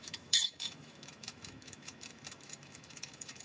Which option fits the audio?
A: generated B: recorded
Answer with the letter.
A